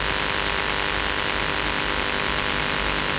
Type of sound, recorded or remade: recorded